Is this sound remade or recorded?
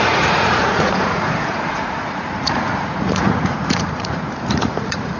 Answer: remade